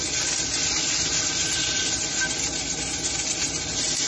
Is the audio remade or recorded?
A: recorded